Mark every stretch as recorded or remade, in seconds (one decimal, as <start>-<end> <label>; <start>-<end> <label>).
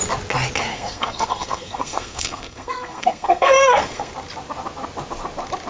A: 0.0-0.7 recorded; 0.7-4.1 remade; 4.1-5.7 recorded